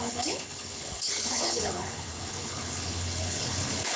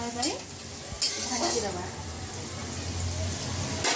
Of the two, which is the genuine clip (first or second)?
second